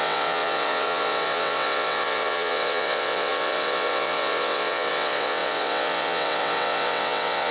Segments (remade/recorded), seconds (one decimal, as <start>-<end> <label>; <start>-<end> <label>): 0.0-7.5 remade